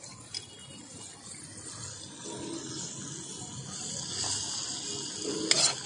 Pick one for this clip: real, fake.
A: real